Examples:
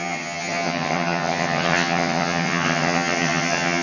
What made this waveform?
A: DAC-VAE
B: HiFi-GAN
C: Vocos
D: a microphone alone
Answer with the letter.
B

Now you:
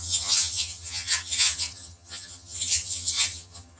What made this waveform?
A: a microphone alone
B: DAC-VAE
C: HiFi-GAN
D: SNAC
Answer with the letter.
C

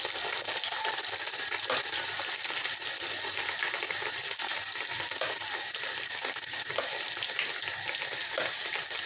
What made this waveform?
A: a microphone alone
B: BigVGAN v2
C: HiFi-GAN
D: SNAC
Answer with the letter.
A